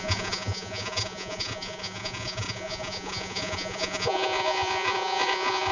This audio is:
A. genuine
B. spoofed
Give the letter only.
B